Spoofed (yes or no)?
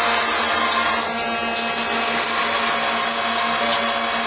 no